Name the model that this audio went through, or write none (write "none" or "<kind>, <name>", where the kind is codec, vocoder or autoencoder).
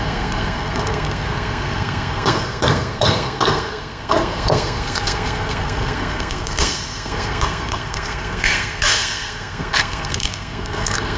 codec, SNAC